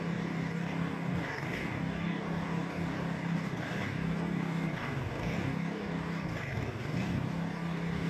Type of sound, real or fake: fake